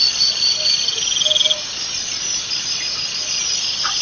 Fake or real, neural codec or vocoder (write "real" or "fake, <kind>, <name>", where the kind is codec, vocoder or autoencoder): real